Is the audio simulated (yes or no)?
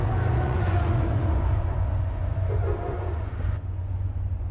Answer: yes